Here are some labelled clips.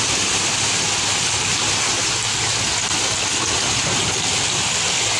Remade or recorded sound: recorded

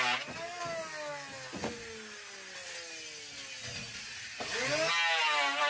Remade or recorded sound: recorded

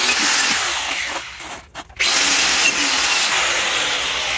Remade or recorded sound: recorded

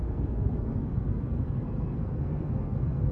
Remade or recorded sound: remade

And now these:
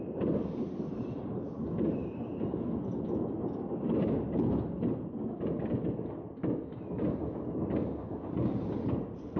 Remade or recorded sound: recorded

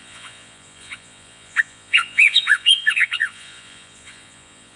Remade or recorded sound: remade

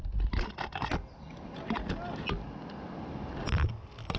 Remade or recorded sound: recorded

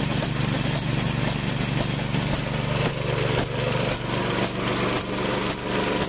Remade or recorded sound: recorded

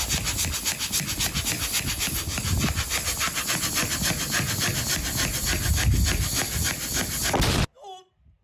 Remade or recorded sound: recorded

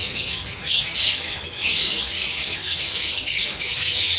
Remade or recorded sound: remade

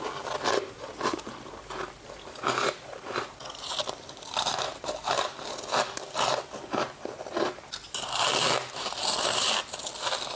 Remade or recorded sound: recorded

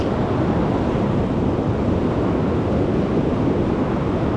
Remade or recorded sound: recorded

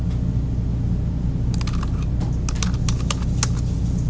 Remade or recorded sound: recorded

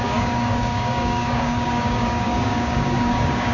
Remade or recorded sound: remade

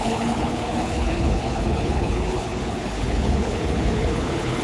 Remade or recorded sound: remade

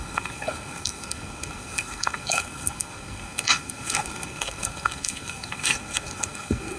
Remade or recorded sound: remade